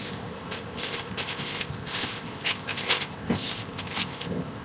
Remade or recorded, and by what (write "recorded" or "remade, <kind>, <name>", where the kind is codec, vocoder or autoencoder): remade, codec, ZipCodec